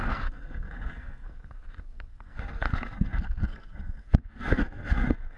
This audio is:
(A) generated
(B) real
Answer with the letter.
A